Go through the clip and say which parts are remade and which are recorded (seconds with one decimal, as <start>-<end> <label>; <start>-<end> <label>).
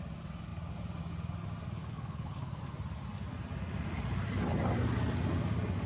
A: 0.0-1.8 recorded; 1.8-2.6 remade; 2.6-5.9 recorded